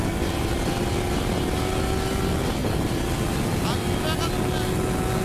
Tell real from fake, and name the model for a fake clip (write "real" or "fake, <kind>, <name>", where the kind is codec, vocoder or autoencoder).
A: real